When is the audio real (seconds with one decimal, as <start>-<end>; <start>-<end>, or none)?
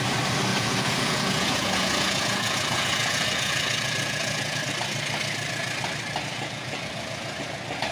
0.0-0.5; 4.6-6.3; 6.9-7.9